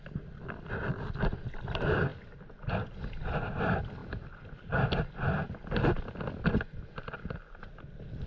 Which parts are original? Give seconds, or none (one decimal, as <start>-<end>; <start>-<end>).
0.0-8.3